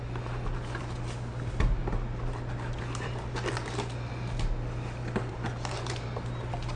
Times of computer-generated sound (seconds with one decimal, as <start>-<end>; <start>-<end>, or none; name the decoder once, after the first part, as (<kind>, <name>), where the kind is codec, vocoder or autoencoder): none